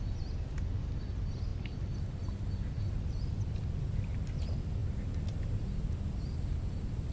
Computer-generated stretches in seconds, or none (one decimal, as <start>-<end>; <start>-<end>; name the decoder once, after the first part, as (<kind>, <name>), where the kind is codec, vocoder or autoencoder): none